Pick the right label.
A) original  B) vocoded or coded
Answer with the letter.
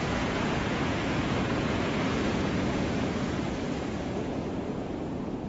B